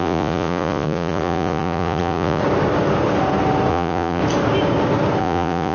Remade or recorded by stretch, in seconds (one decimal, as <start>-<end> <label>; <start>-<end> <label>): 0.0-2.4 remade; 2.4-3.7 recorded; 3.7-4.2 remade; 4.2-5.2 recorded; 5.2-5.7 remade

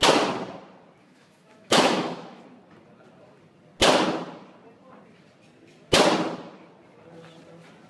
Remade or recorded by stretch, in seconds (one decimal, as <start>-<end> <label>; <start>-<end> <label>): 0.0-1.0 recorded; 1.0-2.4 remade; 2.4-7.9 recorded

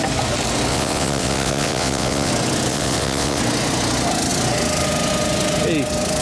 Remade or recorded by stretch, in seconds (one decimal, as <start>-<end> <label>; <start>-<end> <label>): 0.0-0.7 recorded; 0.7-2.3 remade; 2.3-2.7 recorded; 2.7-3.4 remade; 3.4-6.2 recorded

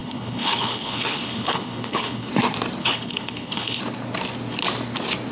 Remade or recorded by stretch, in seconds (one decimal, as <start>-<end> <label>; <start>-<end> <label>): 0.0-2.3 remade; 2.3-2.8 recorded; 2.8-3.8 remade; 3.8-5.3 recorded

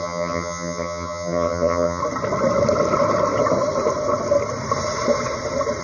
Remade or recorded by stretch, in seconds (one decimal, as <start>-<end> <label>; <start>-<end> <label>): 0.0-2.0 remade; 2.0-5.8 recorded

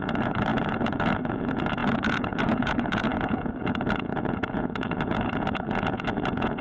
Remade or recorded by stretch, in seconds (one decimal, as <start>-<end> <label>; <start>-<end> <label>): 0.0-6.6 remade

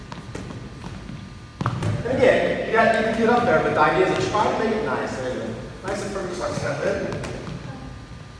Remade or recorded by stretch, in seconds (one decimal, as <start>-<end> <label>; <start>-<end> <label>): 0.0-6.3 recorded; 6.3-7.1 remade; 7.1-8.4 recorded